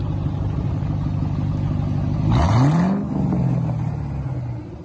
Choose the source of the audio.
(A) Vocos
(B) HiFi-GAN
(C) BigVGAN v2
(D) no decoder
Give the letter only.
D